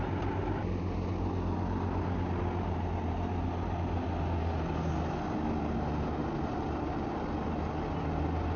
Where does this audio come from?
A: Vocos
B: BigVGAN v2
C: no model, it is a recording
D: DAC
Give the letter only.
C